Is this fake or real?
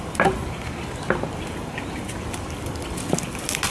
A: real